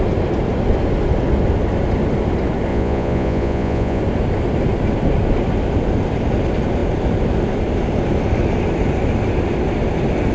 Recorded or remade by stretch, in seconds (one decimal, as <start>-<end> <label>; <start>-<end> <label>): 0.0-2.7 recorded; 2.7-4.0 remade; 4.0-10.3 recorded